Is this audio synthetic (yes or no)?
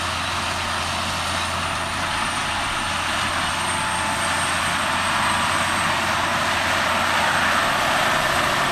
no